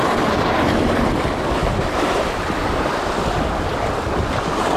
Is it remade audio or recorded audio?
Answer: recorded